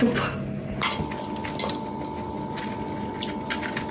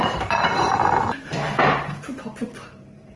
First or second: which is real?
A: first